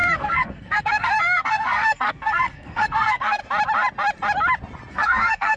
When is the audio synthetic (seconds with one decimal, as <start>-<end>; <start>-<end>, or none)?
0.0-3.4; 4.9-5.6